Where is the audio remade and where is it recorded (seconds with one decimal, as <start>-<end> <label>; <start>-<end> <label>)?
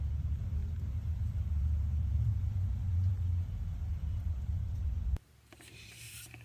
0.0-6.4 remade